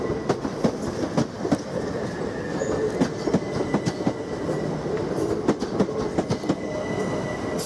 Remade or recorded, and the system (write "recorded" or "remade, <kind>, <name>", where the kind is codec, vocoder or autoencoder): recorded